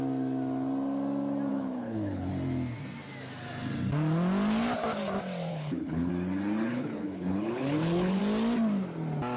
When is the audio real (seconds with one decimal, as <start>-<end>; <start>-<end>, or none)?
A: 0.0-1.5; 2.3-5.5; 6.1-6.7; 8.2-9.4